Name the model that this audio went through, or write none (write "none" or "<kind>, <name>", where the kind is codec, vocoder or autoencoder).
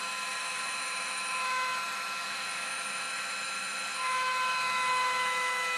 autoencoder, DAC-VAE